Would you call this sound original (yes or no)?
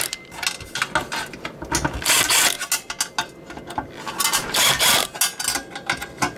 yes